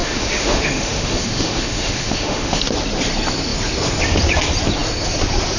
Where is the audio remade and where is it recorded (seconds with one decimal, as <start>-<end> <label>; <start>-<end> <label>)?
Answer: 0.0-2.6 remade; 2.6-5.6 recorded